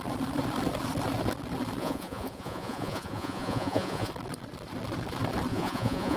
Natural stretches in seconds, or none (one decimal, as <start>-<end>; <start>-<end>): 0.0-1.8; 4.1-5.5